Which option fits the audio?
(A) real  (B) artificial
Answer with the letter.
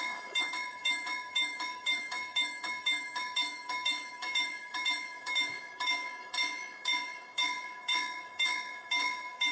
B